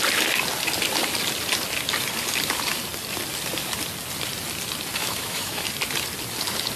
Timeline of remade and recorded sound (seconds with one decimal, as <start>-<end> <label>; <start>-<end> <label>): 0.0-5.0 recorded; 5.0-5.6 remade; 5.6-6.8 recorded